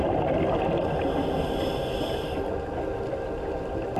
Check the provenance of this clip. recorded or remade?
recorded